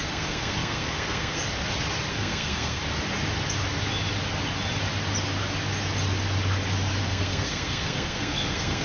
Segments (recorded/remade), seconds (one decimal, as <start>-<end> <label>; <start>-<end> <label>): 0.0-1.4 remade; 1.4-2.1 recorded; 2.1-2.8 remade; 2.8-7.0 recorded; 7.0-8.8 remade